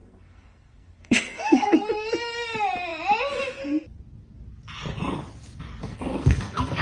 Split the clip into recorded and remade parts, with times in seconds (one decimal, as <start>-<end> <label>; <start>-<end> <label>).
0.0-1.9 remade; 1.9-5.8 recorded; 5.8-6.8 remade